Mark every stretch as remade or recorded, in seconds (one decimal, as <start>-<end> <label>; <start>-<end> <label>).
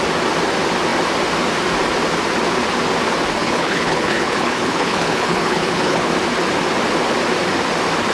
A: 0.0-3.4 recorded; 3.4-6.1 remade; 6.1-8.1 recorded